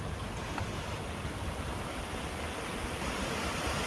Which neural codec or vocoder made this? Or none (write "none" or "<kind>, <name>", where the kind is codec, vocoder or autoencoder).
none